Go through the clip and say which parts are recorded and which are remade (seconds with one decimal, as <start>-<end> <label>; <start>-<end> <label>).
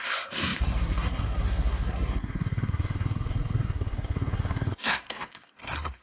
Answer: 0.0-6.0 remade